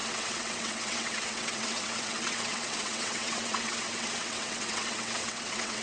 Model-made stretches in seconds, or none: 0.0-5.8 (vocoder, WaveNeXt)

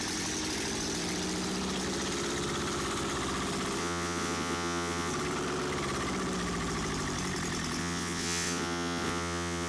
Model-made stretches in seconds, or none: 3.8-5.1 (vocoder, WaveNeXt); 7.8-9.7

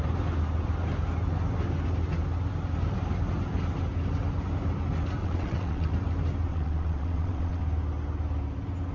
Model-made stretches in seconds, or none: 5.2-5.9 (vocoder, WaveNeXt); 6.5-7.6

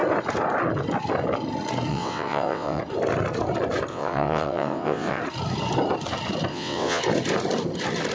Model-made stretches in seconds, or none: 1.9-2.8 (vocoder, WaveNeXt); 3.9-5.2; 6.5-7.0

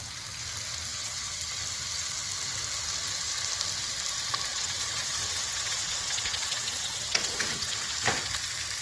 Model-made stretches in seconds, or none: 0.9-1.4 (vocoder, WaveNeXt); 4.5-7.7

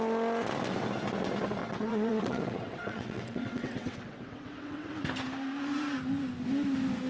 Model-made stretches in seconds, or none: 1.6-4.9 (vocoder, WaveNeXt)

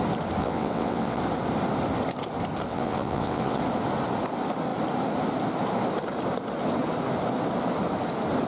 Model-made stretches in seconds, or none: 0.4-1.2 (vocoder, WaveNeXt); 2.7-3.6

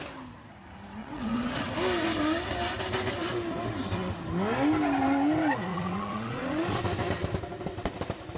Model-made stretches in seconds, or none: 1.0-1.7 (vocoder, WaveNeXt); 5.7-6.8